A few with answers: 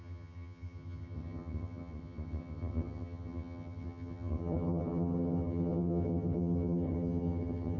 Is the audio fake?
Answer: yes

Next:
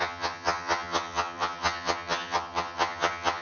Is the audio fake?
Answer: yes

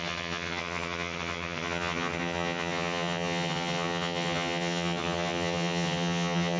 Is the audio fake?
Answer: yes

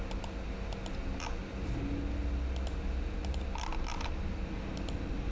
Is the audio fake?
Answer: no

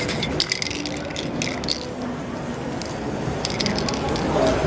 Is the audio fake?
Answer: no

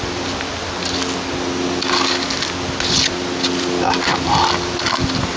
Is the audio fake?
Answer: no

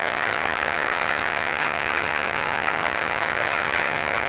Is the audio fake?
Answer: yes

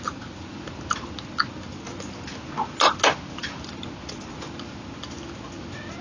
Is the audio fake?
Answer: no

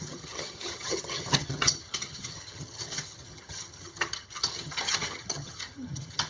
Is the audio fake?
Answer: yes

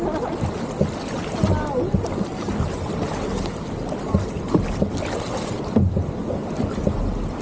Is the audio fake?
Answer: no